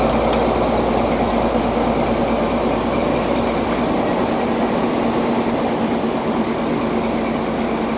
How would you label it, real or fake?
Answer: real